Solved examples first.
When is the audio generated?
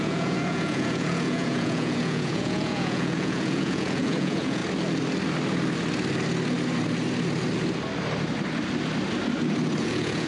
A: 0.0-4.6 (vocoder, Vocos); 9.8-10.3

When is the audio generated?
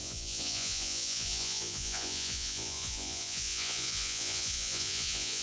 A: 0.0-5.4 (vocoder, Vocos)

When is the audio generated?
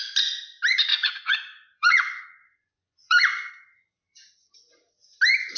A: 0.9-3.5 (vocoder, Vocos)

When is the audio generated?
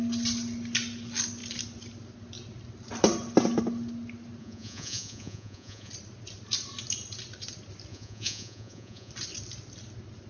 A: 4.4-5.9 (vocoder, Vocos); 7.9-9.1